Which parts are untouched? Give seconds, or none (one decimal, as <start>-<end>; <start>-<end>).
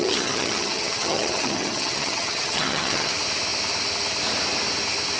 3.1-5.2